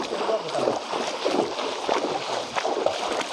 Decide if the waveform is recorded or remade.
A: recorded